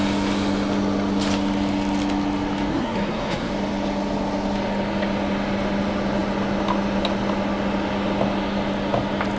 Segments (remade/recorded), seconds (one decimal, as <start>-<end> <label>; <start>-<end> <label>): 0.0-2.7 recorded; 2.7-3.5 remade; 3.5-9.4 recorded